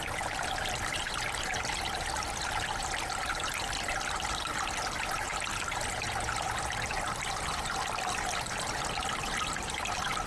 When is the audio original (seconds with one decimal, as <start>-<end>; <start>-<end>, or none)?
0.0-10.3